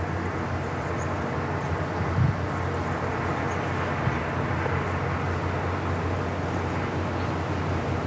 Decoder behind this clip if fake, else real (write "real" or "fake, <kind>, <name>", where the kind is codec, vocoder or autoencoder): real